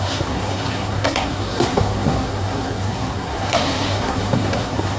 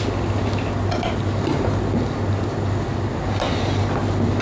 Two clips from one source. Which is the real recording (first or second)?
second